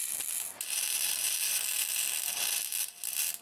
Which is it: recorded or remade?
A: recorded